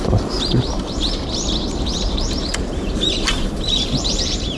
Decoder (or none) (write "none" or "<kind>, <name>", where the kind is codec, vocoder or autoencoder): vocoder, BigVGAN v2